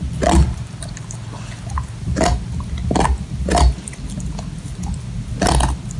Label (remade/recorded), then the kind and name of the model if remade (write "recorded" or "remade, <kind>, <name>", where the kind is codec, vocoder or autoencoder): recorded